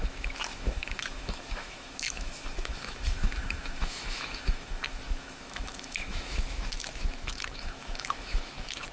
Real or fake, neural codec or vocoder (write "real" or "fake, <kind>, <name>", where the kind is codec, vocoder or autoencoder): fake, autoencoder, DAC-VAE